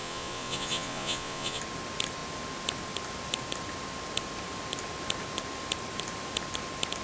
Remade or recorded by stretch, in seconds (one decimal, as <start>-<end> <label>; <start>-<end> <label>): 0.0-1.6 remade; 1.6-7.0 recorded